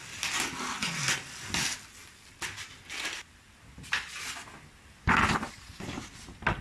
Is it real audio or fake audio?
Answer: real